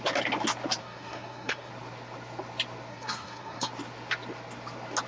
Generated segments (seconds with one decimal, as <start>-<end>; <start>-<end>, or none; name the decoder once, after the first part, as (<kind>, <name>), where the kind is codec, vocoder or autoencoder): 0.8-1.7 (codec, SNAC); 2.9-3.7